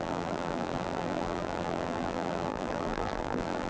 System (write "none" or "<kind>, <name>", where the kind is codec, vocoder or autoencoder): vocoder, BigVGAN v2